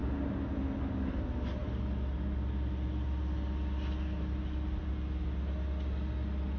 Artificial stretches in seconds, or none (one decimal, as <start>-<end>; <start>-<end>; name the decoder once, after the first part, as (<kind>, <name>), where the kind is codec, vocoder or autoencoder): none